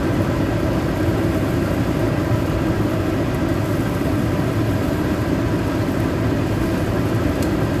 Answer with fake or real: real